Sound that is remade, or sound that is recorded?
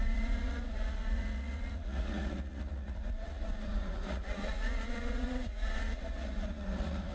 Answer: remade